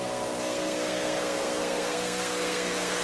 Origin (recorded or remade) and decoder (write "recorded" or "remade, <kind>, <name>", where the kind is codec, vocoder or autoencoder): remade, codec, SNAC